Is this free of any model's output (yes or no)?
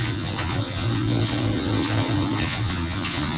no